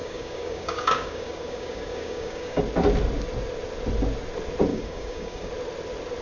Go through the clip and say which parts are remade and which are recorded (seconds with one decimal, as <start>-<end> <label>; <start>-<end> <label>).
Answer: 0.0-2.6 remade; 2.6-4.7 recorded; 4.7-5.5 remade; 5.5-6.2 recorded